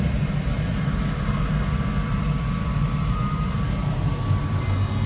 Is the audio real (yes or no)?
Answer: yes